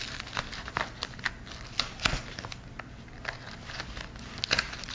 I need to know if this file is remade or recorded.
recorded